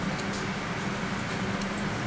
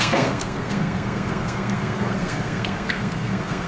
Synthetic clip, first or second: second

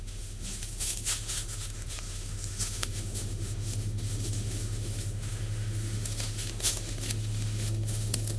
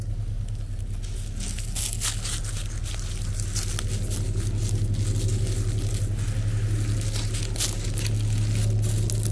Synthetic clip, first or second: first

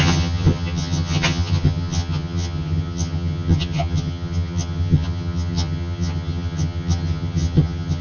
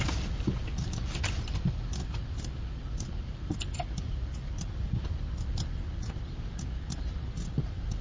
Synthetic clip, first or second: first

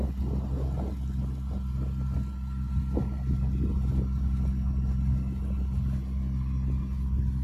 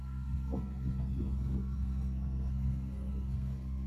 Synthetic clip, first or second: second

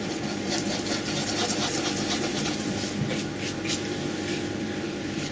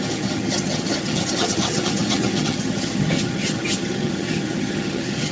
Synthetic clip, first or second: second